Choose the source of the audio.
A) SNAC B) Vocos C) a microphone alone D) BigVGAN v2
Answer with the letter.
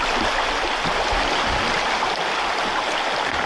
C